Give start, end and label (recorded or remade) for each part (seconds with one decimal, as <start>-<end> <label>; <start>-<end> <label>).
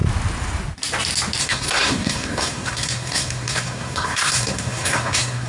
0.0-1.4 recorded; 1.4-5.5 remade